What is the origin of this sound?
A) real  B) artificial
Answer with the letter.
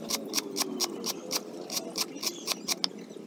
A